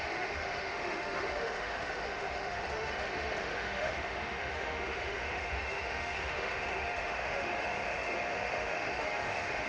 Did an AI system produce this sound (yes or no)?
yes